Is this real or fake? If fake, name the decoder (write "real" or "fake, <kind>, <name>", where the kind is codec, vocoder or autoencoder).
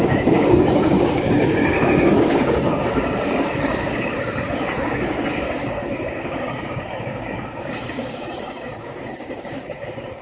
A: fake, codec, DAC